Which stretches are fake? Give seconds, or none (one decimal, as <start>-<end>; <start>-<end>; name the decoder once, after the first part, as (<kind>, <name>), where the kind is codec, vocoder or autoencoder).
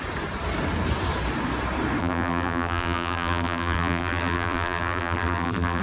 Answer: 2.0-5.8 (vocoder, BigVGAN v2)